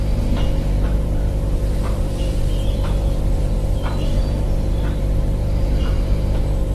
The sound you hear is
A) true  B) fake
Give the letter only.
B